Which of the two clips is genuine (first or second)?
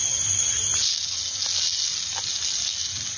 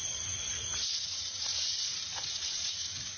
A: first